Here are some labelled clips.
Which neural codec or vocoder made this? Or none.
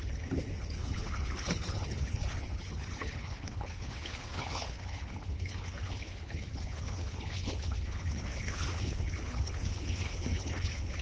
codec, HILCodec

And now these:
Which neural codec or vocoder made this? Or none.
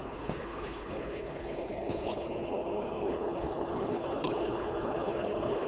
codec, HILCodec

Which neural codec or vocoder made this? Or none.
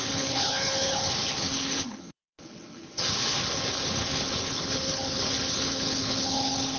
codec, HILCodec